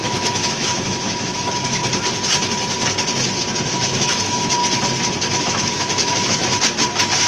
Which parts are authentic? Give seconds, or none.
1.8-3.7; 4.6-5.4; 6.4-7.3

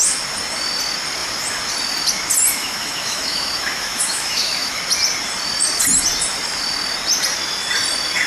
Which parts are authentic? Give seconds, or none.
0.0-2.6; 4.8-8.3

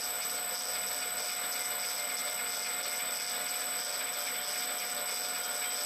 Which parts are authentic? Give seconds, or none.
0.0-5.9

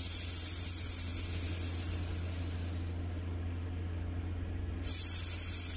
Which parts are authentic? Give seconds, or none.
0.0-5.8

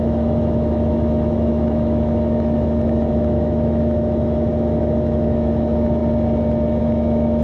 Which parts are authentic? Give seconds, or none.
6.0-6.8

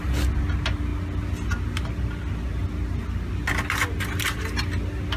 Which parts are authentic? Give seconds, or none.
0.0-5.2

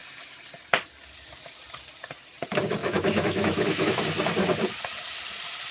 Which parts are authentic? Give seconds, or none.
0.0-2.8; 4.0-5.7

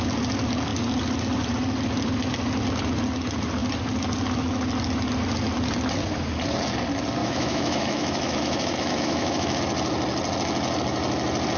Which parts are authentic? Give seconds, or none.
0.0-7.2; 9.6-11.6